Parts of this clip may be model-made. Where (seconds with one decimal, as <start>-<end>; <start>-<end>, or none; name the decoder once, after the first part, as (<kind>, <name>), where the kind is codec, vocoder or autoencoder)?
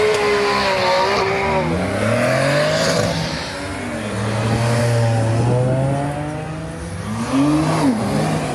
none